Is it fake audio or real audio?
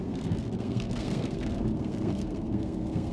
fake